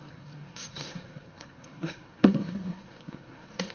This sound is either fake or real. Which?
fake